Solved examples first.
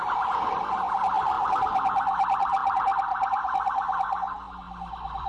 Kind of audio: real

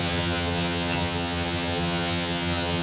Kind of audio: fake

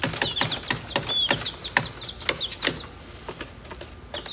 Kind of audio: real